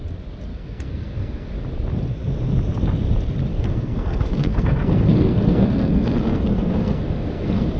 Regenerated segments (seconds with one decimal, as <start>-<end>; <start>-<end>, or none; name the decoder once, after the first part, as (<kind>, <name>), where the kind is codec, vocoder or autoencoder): 0.5-1.5 (codec, SNAC); 3.5-7.8